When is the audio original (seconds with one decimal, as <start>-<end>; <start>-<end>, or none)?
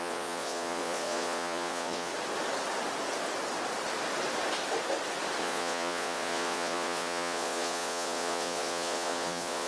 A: 2.1-5.4